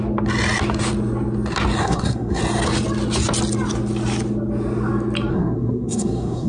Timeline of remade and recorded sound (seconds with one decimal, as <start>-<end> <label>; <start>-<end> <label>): 0.0-1.8 recorded; 1.8-2.4 remade; 2.4-5.3 recorded; 5.3-6.5 remade